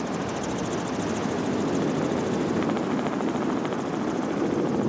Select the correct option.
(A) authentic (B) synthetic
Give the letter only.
A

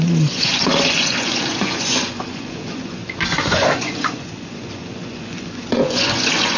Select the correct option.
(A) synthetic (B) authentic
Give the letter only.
A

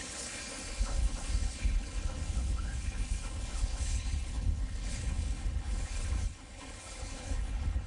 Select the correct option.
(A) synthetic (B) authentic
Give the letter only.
A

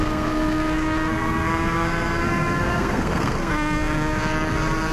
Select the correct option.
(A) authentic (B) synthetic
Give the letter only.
B